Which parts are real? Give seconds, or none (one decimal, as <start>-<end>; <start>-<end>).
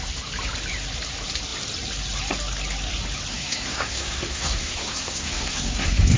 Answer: 0.0-3.3